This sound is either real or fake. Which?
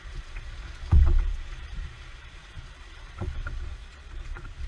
fake